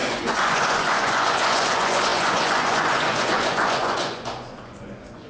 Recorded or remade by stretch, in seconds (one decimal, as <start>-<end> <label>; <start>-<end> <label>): 0.0-5.3 remade